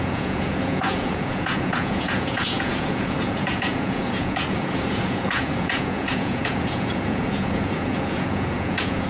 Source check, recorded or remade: remade